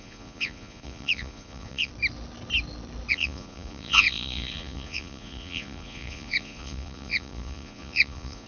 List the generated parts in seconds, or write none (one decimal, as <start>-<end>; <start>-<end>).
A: 0.0-1.9; 3.1-8.5